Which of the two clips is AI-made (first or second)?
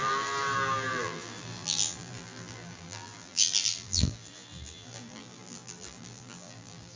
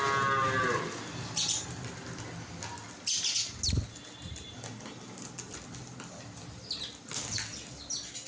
first